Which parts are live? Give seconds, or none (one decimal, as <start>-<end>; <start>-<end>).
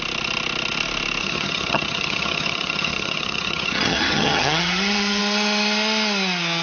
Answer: 0.0-1.2; 5.2-6.6